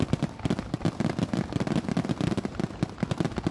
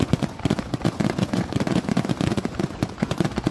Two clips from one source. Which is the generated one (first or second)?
second